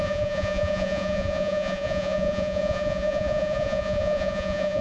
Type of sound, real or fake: fake